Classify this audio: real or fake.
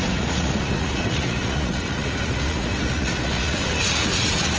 fake